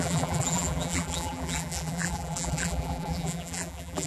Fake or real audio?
fake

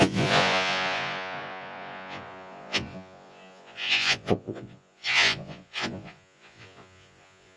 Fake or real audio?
fake